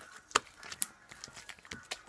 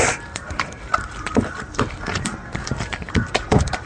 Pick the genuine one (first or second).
first